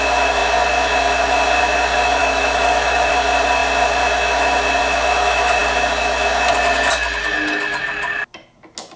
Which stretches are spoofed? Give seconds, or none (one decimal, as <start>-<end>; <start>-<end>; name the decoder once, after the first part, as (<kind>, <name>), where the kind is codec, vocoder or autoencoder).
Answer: 2.2-3.1 (autoencoder, DAC-VAE)